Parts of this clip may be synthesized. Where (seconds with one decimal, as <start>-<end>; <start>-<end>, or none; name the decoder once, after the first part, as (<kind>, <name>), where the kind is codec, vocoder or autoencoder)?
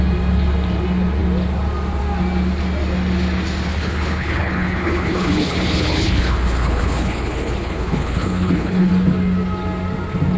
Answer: 3.7-8.9 (codec, HILCodec)